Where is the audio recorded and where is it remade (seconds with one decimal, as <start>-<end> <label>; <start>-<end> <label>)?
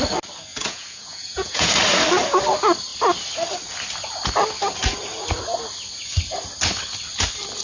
0.0-0.5 recorded; 0.5-1.7 remade; 1.7-7.6 recorded